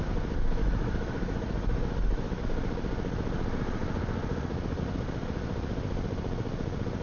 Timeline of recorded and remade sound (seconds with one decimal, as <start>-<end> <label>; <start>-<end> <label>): 0.0-0.6 recorded; 0.6-2.4 remade; 2.4-7.0 recorded